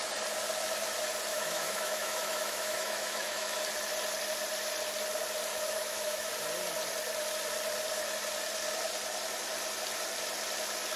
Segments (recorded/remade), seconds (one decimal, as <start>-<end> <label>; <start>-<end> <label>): 0.0-1.3 recorded; 1.3-3.6 remade; 3.6-5.5 recorded; 5.5-6.3 remade; 6.3-11.0 recorded